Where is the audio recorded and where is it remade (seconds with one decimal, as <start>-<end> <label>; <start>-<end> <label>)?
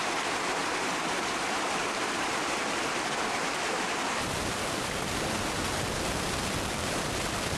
0.0-7.6 recorded